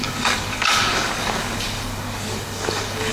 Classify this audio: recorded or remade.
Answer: remade